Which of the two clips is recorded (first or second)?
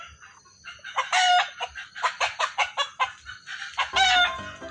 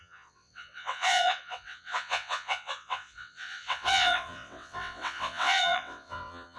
first